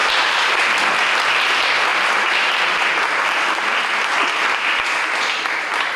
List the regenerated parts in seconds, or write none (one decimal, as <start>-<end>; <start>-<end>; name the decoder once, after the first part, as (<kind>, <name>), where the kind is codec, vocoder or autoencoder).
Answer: 1.9-3.8 (vocoder, BigVGAN v2)

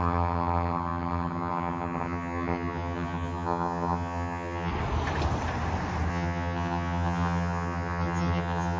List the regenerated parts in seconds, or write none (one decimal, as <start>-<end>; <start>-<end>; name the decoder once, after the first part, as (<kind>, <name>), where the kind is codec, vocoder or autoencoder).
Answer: 0.0-4.7 (vocoder, HiFi-GAN); 6.1-8.8